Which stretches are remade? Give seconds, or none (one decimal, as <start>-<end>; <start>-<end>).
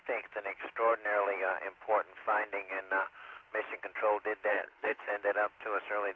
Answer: 4.5-5.1